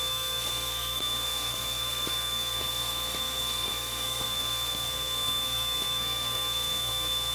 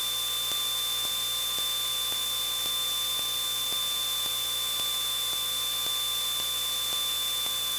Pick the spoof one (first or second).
first